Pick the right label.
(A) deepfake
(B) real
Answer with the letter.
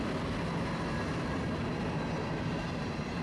B